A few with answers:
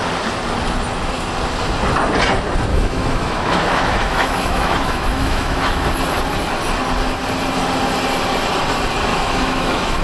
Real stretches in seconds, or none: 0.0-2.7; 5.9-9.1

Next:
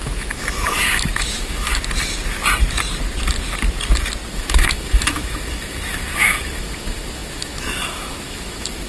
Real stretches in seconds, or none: 1.7-4.3

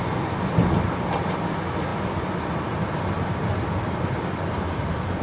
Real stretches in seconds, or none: 0.0-5.2

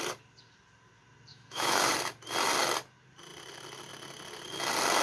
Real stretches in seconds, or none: 0.0-1.3; 1.9-5.0

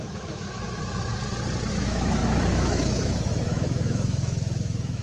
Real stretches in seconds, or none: 1.1-1.7

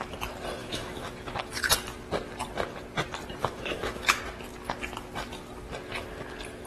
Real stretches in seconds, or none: 0.0-0.6; 1.7-3.4; 4.2-6.7

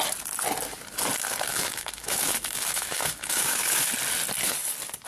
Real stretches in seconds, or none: 0.0-1.5; 3.9-5.1